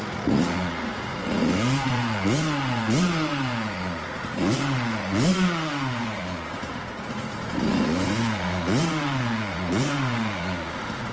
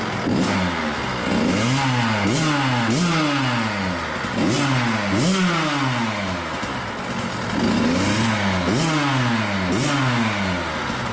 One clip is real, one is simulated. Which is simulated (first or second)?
first